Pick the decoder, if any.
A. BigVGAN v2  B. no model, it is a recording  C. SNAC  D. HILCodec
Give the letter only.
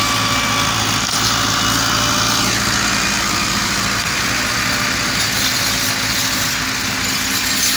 B